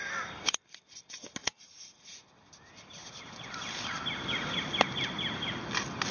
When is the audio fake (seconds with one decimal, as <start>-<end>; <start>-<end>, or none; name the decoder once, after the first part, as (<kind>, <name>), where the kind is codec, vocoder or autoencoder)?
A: 1.4-2.1 (vocoder, Vocos)

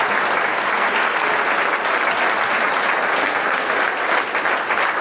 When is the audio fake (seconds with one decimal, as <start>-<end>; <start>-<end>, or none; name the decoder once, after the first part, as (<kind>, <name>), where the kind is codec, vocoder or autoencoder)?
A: 0.5-1.3 (codec, SNAC); 3.2-3.8

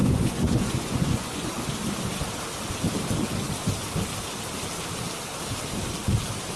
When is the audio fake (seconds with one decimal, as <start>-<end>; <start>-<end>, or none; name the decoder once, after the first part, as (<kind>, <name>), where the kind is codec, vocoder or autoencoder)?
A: 0.0-1.6 (vocoder, Vocos)

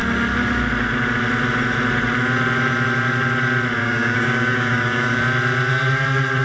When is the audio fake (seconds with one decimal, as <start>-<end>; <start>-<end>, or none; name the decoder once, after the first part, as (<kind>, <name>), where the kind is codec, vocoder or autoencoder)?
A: 3.8-5.2 (codec, DAC)

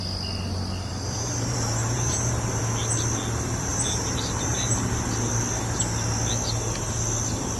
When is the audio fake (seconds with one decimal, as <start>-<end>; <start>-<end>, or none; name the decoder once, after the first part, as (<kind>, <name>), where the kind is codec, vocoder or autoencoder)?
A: 0.9-2.6 (vocoder, BigVGAN v2); 3.7-4.8